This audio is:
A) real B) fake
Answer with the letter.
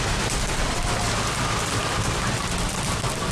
A